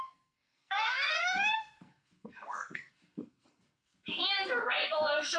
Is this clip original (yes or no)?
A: no